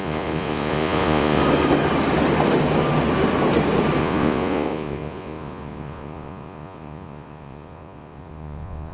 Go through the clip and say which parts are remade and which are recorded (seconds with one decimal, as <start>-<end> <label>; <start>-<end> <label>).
0.0-1.4 remade; 1.4-4.0 recorded; 4.0-8.9 remade